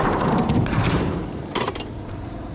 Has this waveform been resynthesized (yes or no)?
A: yes